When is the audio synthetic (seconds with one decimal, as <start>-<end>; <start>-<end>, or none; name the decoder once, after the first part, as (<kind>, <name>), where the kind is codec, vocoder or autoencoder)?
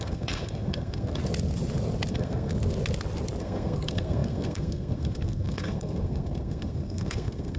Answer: 0.0-1.2 (codec, SNAC); 2.1-2.5; 3.4-7.6